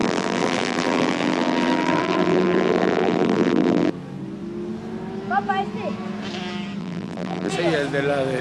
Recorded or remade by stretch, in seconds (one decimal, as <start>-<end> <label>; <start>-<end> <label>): 0.0-3.9 remade; 3.9-6.8 recorded; 6.8-7.5 remade; 7.5-8.4 recorded